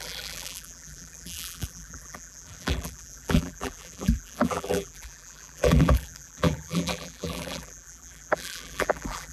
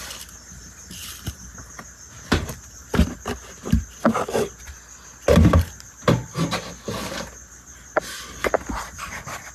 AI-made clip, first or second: first